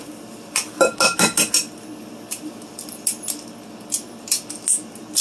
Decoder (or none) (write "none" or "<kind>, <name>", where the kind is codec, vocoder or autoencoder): none